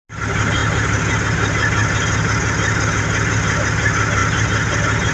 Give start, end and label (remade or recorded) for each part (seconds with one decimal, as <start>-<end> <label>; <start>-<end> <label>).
0.0-5.1 recorded